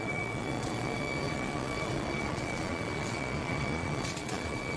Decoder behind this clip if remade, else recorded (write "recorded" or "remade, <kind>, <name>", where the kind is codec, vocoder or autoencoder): remade, vocoder, Vocos